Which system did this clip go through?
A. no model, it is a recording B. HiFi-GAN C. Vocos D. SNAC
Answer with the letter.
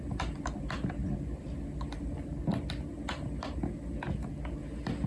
A